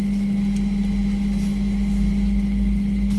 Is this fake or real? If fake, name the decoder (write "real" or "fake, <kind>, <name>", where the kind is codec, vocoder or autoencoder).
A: real